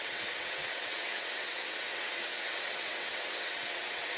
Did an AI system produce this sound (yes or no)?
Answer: yes